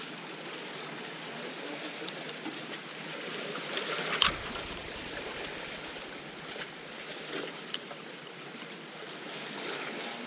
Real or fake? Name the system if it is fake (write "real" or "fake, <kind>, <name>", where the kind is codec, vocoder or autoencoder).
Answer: real